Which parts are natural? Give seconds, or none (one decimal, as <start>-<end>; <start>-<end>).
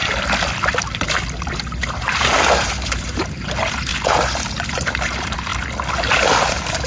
0.0-1.9; 3.9-4.7; 5.5-6.5